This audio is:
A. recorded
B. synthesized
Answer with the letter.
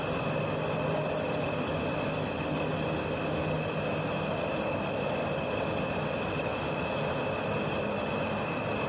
A